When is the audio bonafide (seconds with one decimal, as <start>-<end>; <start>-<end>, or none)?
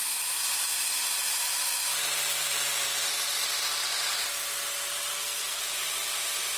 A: 0.0-5.1; 5.6-6.6